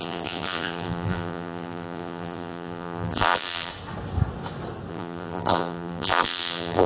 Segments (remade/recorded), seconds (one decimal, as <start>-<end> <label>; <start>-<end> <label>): 0.0-3.7 remade; 3.7-4.9 recorded; 4.9-6.9 remade